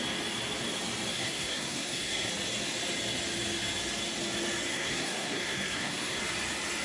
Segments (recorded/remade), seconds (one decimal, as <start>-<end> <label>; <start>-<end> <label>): 0.0-1.1 recorded; 1.1-2.3 remade; 2.3-4.7 recorded; 4.7-6.2 remade; 6.2-6.8 recorded